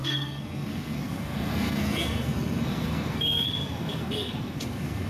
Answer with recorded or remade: remade